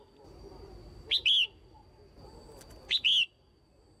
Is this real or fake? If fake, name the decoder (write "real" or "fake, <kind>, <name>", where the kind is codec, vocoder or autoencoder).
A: real